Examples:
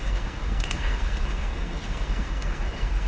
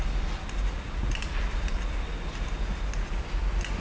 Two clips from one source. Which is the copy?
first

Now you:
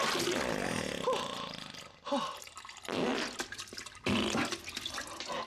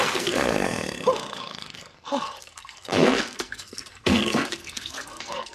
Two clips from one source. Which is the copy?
second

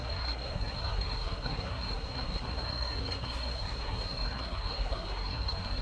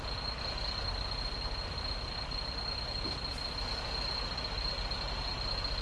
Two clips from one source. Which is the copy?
first